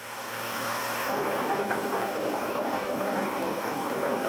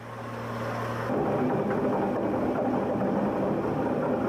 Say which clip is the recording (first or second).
second